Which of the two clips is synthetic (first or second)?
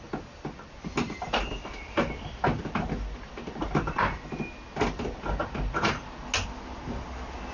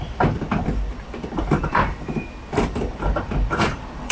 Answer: second